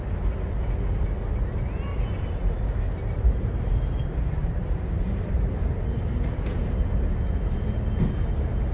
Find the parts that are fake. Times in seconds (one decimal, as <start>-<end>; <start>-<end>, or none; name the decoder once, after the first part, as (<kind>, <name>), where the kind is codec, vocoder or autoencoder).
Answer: 1.9-5.7 (vocoder, BigVGAN v2)

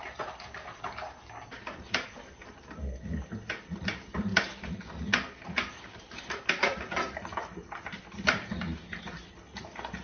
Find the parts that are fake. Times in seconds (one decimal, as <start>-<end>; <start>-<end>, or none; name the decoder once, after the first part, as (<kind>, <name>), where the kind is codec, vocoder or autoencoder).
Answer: none

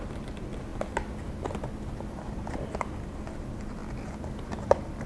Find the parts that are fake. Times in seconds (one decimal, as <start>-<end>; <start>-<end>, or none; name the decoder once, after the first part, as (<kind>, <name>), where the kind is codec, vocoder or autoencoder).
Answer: 0.0-0.7 (vocoder, BigVGAN v2); 2.0-3.8; 4.4-5.1

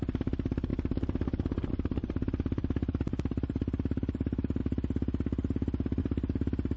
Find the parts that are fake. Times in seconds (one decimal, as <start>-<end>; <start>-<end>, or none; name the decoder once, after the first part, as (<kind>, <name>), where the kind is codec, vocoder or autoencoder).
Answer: 0.0-0.7 (vocoder, BigVGAN v2); 1.7-4.6; 6.0-6.8

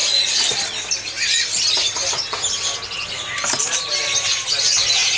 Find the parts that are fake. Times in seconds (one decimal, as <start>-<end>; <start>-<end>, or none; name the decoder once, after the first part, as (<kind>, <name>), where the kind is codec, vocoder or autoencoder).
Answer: none

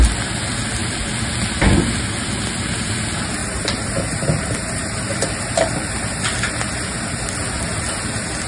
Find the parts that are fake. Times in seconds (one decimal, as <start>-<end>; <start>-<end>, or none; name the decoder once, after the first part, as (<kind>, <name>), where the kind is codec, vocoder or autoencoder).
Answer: 3.4-6.2 (vocoder, BigVGAN v2)

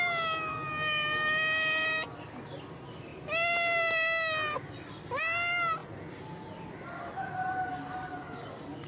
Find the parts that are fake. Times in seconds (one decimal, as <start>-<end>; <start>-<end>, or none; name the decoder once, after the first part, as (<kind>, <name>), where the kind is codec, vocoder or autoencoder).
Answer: none